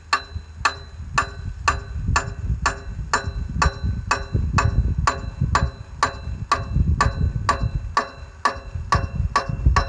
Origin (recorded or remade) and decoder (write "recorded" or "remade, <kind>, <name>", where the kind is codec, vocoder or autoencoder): recorded